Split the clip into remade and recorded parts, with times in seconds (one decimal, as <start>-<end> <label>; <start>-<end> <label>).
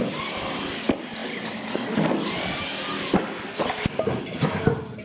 0.0-5.0 recorded